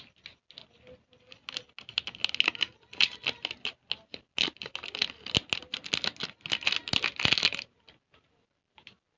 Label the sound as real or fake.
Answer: real